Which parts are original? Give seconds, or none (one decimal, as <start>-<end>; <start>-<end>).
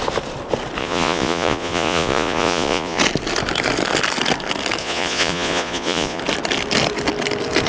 0.0-0.8; 3.0-4.8; 6.2-7.7